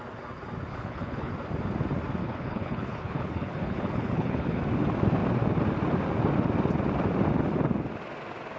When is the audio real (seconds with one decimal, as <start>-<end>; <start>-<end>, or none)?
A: 0.0-0.7; 1.3-2.2; 4.6-8.6